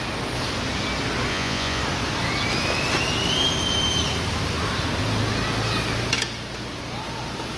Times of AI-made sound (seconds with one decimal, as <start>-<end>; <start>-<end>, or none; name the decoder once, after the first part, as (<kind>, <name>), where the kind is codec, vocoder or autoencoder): 1.3-1.8 (vocoder, Vocos)